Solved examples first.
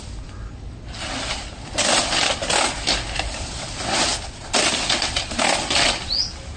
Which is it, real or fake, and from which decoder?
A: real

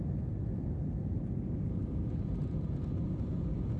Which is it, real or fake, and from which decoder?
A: real